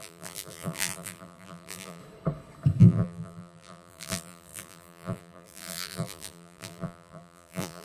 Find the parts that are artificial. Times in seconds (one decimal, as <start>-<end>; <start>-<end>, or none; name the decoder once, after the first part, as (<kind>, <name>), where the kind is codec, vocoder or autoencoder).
0.0-2.0 (vocoder, BigVGAN v2); 2.8-7.8